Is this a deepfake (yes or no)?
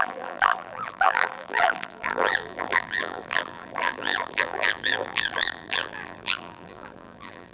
yes